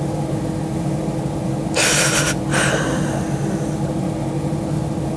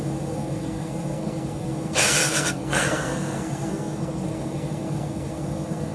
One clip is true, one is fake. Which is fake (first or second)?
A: second